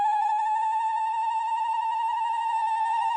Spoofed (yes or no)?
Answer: yes